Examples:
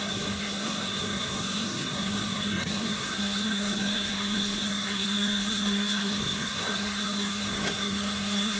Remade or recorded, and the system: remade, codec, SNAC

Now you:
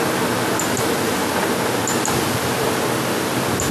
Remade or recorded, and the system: recorded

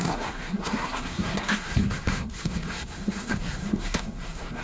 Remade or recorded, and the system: remade, codec, SNAC